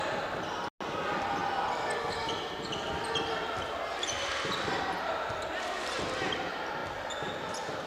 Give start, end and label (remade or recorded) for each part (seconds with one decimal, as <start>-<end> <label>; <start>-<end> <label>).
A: 0.0-7.9 recorded

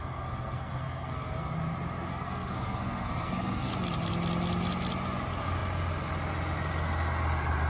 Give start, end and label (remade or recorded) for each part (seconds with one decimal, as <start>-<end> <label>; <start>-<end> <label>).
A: 0.0-1.5 remade; 1.5-2.1 recorded; 2.1-3.7 remade; 3.7-7.7 recorded

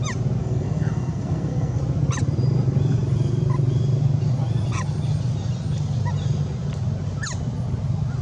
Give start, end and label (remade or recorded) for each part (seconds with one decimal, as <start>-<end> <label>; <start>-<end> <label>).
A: 0.0-0.4 recorded; 0.4-1.8 remade; 1.8-8.2 recorded

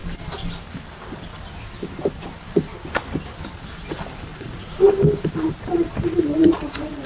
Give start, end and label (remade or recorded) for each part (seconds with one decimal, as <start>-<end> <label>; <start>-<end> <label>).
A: 0.0-4.3 recorded; 4.3-4.9 remade; 4.9-6.4 recorded; 6.4-7.1 remade

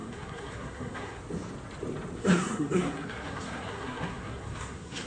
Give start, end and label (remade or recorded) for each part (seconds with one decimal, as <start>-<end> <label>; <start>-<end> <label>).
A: 0.0-1.2 remade; 1.2-2.2 recorded; 2.2-5.1 remade

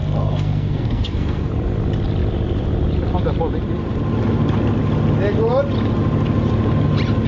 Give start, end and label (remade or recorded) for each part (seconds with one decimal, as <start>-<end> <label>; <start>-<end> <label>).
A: 0.0-1.5 remade; 1.5-7.3 recorded

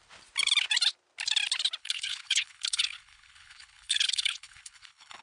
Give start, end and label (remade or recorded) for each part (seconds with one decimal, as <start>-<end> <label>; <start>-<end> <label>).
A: 0.0-1.8 recorded; 1.8-5.2 remade